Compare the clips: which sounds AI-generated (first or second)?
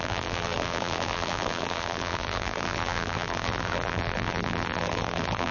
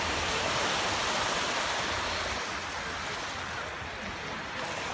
first